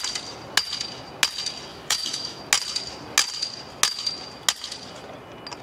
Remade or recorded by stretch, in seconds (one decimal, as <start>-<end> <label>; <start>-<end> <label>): 0.0-1.7 recorded; 1.7-2.4 remade; 2.4-5.6 recorded